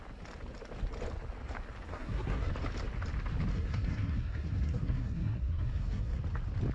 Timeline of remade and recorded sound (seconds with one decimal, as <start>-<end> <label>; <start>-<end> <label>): 0.0-1.9 recorded; 1.9-2.5 remade; 2.5-3.5 recorded; 3.5-6.2 remade; 6.2-6.7 recorded